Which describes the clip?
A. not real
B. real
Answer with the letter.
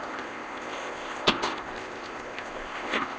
A